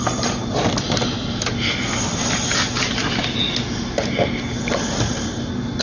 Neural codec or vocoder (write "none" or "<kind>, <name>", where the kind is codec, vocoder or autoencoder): none